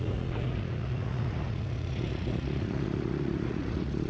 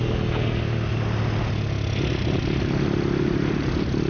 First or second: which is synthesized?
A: first